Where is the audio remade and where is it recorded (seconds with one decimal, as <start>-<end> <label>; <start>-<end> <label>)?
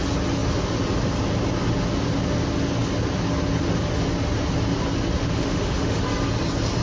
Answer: 0.0-5.2 recorded; 5.2-6.0 remade; 6.0-6.8 recorded